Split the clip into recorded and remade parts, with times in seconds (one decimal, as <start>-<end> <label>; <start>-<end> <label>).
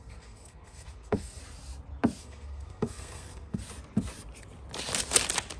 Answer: 0.0-1.4 remade; 1.4-2.2 recorded; 2.2-3.6 remade; 3.6-5.6 recorded